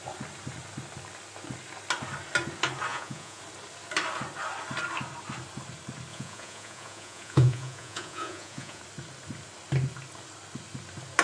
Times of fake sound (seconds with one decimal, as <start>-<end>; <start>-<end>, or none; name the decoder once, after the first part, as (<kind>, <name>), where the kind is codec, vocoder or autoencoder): 2.9-3.4 (vocoder, Vocos); 6.1-8.8